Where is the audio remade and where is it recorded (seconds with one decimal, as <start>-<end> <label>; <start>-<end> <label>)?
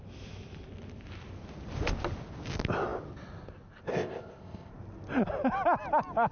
0.0-3.9 recorded; 3.9-4.7 remade; 4.7-6.3 recorded